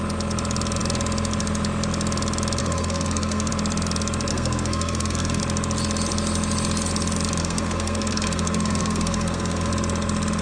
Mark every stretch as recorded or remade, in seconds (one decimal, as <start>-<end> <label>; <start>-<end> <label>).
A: 0.0-2.6 recorded; 2.6-3.5 remade; 3.5-4.3 recorded; 4.3-5.4 remade; 5.4-7.4 recorded; 7.4-9.7 remade; 9.7-10.4 recorded